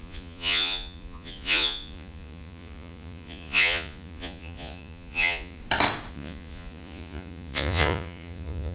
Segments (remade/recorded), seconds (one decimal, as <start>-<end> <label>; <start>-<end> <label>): 0.0-5.6 remade; 5.6-6.1 recorded; 6.1-8.7 remade